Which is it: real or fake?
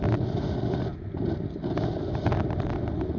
real